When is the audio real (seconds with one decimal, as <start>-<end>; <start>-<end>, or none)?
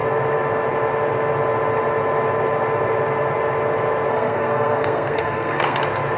0.0-4.1; 5.8-6.2